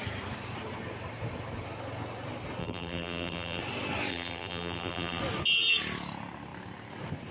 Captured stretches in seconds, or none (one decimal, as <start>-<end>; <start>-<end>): 0.0-2.6; 3.6-4.1; 5.2-7.3